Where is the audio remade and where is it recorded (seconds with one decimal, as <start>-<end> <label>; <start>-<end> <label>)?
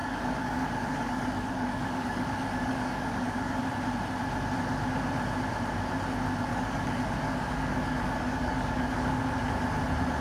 0.0-3.6 remade; 3.6-6.5 recorded; 6.5-9.5 remade; 9.5-10.2 recorded